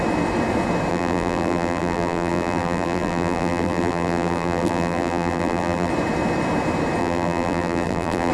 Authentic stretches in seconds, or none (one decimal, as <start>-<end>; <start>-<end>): 0.0-0.9; 5.9-7.0